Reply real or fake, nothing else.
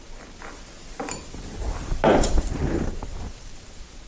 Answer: real